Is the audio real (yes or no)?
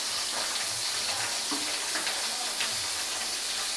yes